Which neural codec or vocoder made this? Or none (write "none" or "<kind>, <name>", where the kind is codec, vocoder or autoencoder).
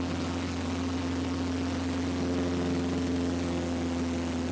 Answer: none